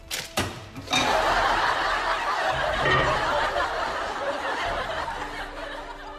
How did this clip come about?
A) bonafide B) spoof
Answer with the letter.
A